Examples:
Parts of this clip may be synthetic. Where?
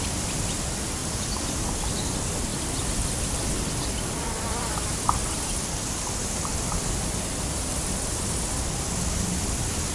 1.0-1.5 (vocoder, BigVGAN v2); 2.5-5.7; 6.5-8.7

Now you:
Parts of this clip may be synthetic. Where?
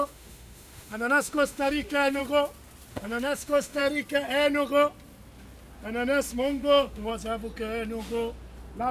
0.0-2.2 (autoencoder, DAC-VAE); 2.9-3.8; 6.3-7.1